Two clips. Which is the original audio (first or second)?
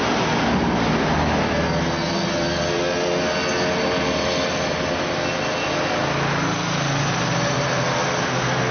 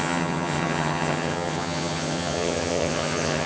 first